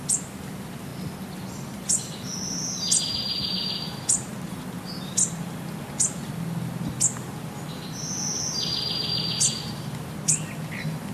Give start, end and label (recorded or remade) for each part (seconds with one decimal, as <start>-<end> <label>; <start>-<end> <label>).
0.0-11.1 recorded